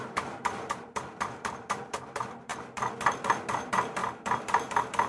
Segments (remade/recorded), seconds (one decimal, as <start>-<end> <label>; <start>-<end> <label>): 0.0-2.5 remade; 2.5-3.6 recorded; 3.6-5.1 remade